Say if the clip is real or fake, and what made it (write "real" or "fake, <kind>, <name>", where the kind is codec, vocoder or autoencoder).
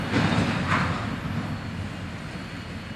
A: real